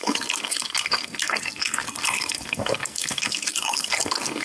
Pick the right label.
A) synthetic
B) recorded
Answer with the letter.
A